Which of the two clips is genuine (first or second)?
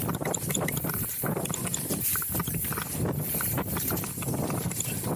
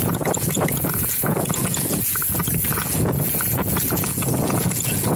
first